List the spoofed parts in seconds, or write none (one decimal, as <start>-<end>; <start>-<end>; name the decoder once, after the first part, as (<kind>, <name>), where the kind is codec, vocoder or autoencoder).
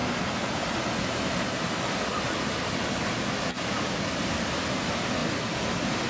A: none